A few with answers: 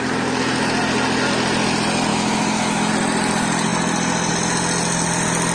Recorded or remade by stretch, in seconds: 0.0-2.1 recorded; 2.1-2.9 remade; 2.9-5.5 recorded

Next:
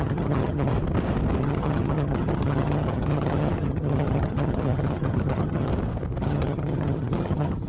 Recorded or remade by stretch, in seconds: 0.0-0.7 remade; 0.7-1.4 recorded; 1.4-5.7 remade; 5.7-6.2 recorded; 6.2-7.7 remade